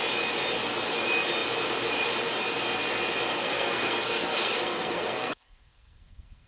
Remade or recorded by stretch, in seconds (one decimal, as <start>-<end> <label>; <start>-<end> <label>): 0.0-3.3 recorded; 3.3-6.5 remade